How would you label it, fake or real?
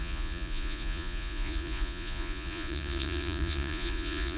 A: fake